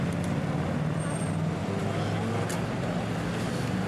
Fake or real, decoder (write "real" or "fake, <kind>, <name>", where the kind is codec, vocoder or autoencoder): real